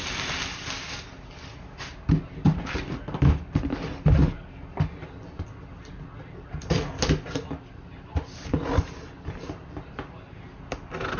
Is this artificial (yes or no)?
no